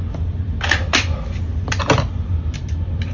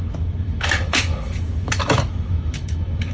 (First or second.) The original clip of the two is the first